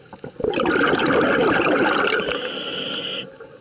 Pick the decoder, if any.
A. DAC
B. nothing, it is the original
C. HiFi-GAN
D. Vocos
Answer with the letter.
B